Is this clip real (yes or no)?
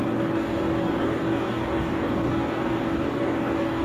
no